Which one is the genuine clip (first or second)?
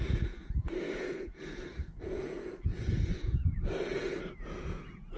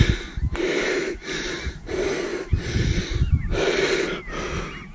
second